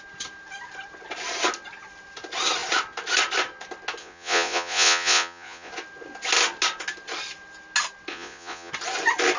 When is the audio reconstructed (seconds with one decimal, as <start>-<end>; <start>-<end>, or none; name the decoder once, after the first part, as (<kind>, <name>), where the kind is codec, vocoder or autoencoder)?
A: 4.0-5.7 (vocoder, Vocos); 8.1-8.7

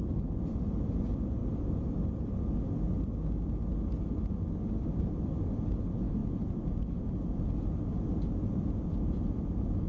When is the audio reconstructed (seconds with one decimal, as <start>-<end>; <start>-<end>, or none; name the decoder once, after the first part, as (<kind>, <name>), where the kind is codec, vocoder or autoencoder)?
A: none

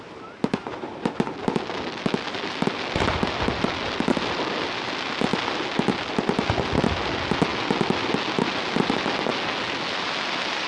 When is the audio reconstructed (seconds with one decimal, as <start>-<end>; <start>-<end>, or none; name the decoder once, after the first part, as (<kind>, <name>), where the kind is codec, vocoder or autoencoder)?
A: none

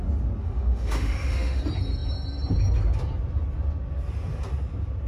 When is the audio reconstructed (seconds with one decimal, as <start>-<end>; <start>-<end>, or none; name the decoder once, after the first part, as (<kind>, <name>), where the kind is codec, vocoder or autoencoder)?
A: 0.4-1.6 (autoencoder, DAC-VAE)

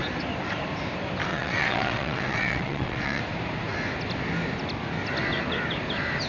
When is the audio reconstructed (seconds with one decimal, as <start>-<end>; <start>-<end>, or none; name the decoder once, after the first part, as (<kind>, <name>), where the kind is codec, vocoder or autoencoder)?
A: 1.3-3.2 (vocoder, WaveNeXt)

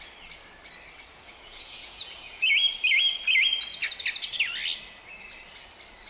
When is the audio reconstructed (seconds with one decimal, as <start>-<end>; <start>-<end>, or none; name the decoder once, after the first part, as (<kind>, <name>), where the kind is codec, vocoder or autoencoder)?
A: 1.1-2.5 (vocoder, Vocos)

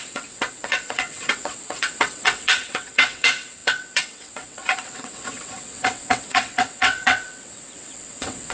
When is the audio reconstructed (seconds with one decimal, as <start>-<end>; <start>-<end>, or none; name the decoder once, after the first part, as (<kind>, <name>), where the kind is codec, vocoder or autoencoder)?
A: 0.0-8.5 (vocoder, WaveNeXt)